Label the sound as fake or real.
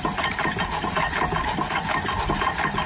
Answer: real